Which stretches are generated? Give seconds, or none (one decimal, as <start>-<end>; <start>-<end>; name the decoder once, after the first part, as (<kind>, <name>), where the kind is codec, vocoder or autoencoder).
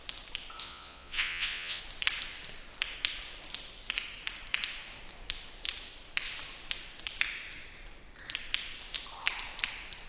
0.6-1.8 (vocoder, Vocos)